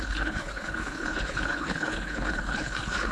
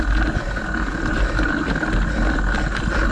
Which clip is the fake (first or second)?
first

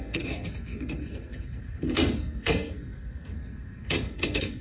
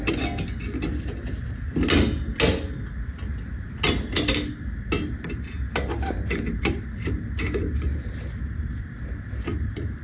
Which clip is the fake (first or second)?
first